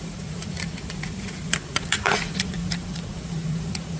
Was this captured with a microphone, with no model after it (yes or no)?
no